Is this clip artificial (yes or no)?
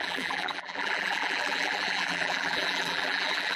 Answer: yes